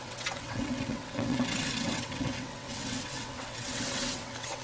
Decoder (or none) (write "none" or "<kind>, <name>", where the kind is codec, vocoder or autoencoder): vocoder, WaveNeXt